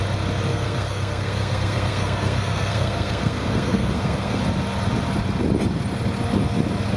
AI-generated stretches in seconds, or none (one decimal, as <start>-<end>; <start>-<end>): 0.5-4.4